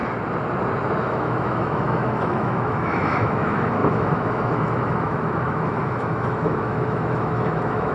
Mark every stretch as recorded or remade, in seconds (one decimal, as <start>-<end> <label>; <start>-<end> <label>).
0.0-1.0 recorded; 1.0-7.9 remade